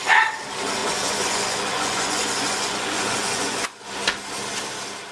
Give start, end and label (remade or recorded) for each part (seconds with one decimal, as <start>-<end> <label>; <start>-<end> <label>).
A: 0.0-0.8 recorded; 0.8-3.9 remade; 3.9-5.1 recorded